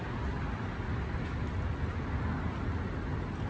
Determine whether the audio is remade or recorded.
recorded